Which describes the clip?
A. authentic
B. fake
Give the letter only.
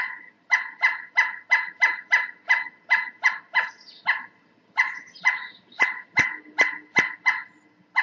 A